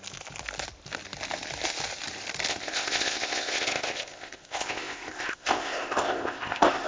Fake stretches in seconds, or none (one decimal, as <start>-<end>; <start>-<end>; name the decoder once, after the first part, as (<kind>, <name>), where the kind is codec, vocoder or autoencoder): 2.5-6.9 (codec, ZipCodec)